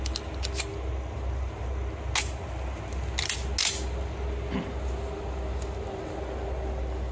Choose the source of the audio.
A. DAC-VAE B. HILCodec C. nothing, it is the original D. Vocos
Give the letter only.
C